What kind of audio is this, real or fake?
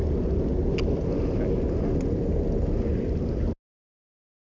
real